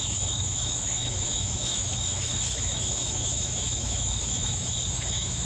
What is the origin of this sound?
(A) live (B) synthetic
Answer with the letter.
B